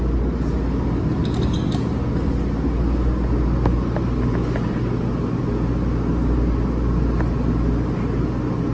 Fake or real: real